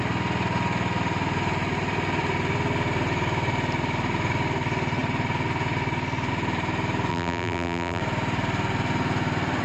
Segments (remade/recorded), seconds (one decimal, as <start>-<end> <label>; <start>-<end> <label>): 0.0-7.1 recorded; 7.1-8.0 remade; 8.0-9.6 recorded